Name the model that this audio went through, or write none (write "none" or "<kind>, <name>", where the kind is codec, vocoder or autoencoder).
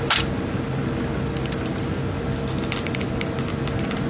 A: none